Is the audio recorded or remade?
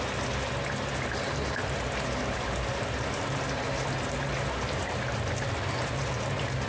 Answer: recorded